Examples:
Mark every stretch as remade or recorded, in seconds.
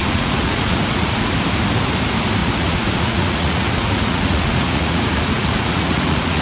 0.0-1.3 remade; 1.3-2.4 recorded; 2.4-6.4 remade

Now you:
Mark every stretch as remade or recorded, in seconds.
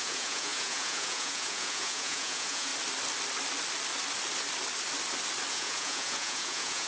0.0-2.7 remade; 2.7-5.5 recorded; 5.5-6.9 remade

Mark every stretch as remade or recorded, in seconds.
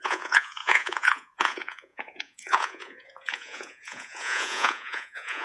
0.0-5.4 remade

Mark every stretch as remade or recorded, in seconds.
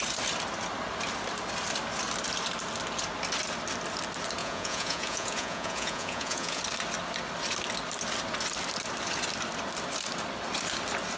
0.0-4.4 recorded; 4.4-6.6 remade; 6.6-11.2 recorded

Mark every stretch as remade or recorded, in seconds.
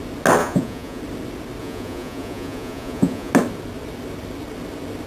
0.0-0.4 recorded; 0.4-1.0 remade; 1.0-1.6 recorded; 1.6-3.3 remade; 3.3-5.1 recorded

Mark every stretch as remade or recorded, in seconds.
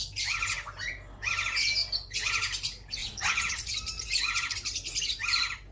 0.0-3.0 recorded; 3.0-3.7 remade; 3.7-5.7 recorded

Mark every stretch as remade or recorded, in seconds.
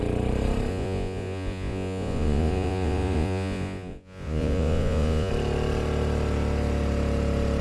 0.0-0.7 recorded; 0.7-5.3 remade; 5.3-7.6 recorded